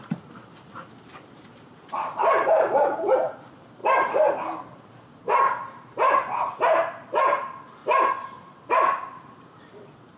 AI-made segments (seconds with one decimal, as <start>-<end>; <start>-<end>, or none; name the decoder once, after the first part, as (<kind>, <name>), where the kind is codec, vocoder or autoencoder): 0.0-7.8 (vocoder, BigVGAN v2); 8.7-10.2